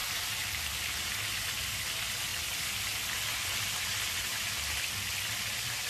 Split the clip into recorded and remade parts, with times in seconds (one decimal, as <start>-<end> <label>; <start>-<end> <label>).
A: 0.0-0.7 remade; 0.7-5.9 recorded